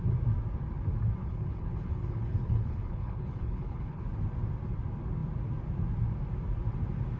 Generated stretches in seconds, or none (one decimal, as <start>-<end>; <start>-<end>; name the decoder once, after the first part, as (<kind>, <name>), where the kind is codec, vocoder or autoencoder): 1.2-4.0 (codec, HILCodec)